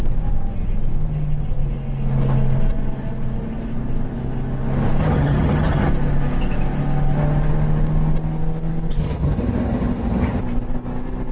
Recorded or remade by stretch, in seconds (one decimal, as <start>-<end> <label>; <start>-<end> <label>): 0.0-5.0 recorded; 5.0-5.9 remade; 5.9-9.0 recorded; 9.0-10.4 remade; 10.4-11.3 recorded